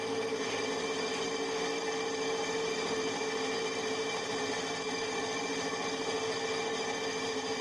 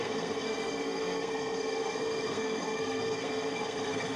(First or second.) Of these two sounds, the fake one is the second